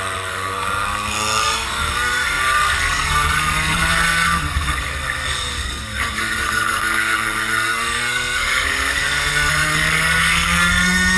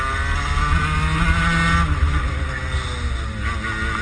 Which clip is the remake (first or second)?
first